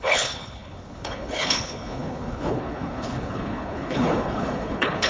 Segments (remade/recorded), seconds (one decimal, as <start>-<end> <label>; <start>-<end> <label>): 0.0-5.1 remade